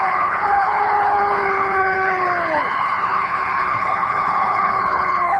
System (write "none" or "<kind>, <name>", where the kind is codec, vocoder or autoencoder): codec, HILCodec